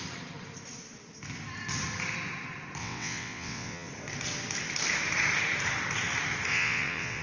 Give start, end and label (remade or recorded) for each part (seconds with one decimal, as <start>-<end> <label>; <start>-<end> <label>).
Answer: 0.0-2.8 recorded; 2.8-3.9 remade; 3.9-6.5 recorded; 6.5-7.2 remade